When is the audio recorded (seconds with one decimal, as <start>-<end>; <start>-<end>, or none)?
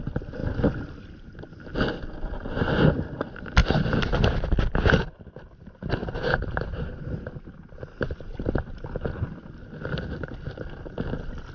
0.0-11.5